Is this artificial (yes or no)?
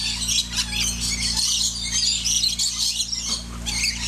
no